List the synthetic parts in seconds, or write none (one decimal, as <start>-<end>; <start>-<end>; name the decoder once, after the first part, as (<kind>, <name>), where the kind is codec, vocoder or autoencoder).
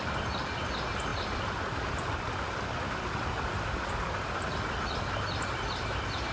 none